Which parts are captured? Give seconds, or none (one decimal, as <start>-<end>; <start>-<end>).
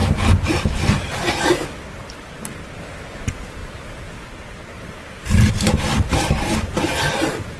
0.0-7.6